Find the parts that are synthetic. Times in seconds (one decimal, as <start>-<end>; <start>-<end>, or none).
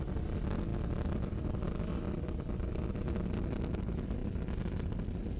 none